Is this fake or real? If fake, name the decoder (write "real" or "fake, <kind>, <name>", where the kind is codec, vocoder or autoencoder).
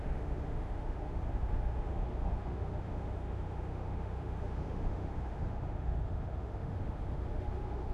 fake, autoencoder, DAC-VAE